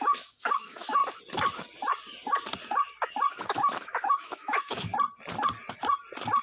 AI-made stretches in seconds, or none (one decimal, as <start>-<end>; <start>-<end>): 0.0-1.0; 3.3-4.9